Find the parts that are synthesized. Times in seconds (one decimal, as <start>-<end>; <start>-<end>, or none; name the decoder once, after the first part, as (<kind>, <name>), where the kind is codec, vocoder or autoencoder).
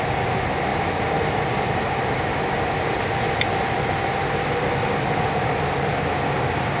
none